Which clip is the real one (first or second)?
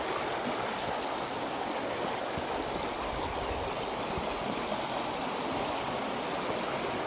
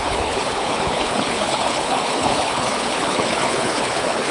first